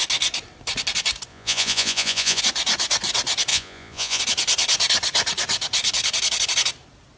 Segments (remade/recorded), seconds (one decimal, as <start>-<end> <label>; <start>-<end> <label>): 0.0-1.3 recorded; 1.3-2.4 remade; 2.4-3.5 recorded; 3.5-4.2 remade; 4.2-7.2 recorded